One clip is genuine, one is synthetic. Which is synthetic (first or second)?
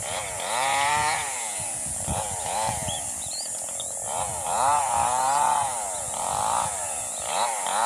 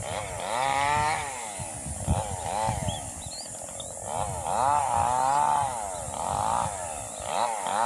first